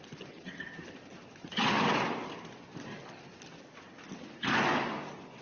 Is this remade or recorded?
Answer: recorded